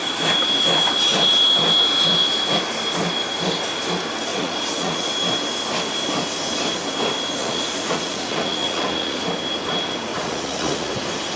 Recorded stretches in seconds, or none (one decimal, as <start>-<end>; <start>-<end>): 0.0-4.3; 5.1-7.4; 9.2-10.1; 10.9-11.4